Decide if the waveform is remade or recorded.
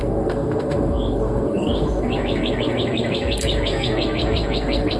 remade